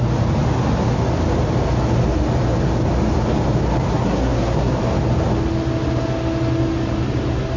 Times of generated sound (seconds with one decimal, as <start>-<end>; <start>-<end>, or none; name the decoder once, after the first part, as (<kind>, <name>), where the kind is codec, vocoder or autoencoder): 3.9-4.7 (codec, SNAC)